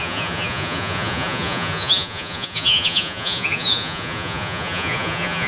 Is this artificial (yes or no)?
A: yes